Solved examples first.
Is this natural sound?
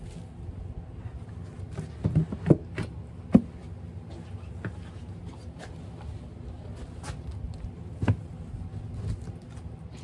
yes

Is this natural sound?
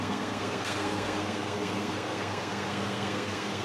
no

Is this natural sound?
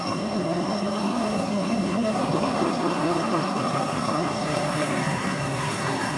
no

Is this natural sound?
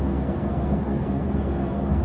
no